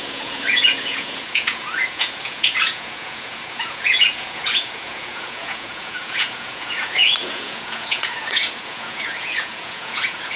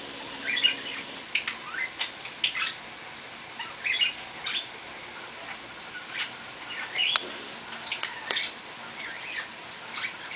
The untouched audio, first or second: second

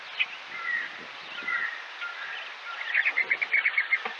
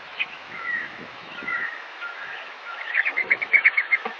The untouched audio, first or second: first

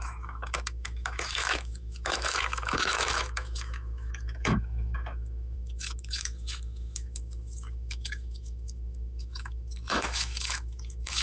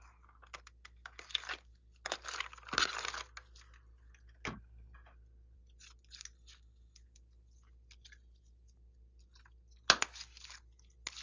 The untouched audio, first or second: second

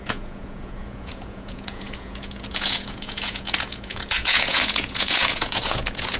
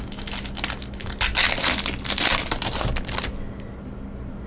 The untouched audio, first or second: second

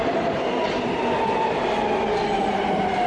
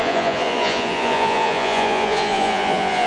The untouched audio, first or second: first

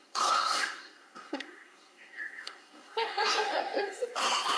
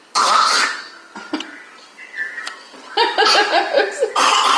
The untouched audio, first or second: second